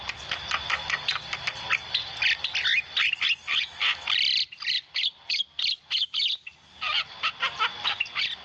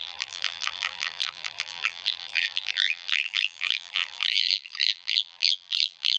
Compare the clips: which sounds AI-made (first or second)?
second